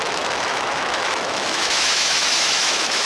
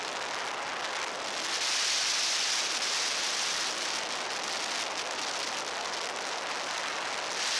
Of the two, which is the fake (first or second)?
first